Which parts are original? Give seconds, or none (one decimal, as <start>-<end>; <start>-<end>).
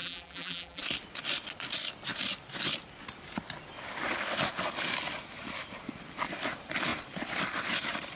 0.8-8.2